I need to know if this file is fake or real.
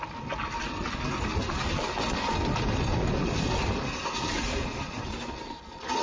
real